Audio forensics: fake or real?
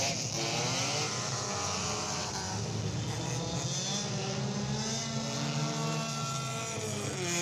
real